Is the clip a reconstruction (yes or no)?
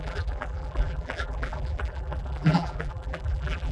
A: yes